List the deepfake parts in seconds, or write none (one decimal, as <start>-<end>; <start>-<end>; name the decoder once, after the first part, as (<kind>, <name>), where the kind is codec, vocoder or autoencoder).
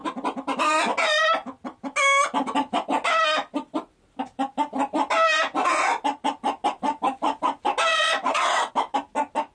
7.9-8.7 (vocoder, WaveNeXt)